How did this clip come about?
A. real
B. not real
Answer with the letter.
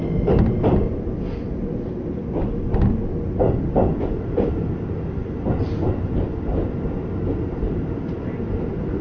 A